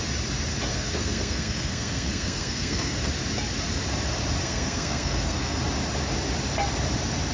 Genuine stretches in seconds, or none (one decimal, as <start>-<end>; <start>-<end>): 0.0-0.7; 3.1-4.4; 5.6-7.3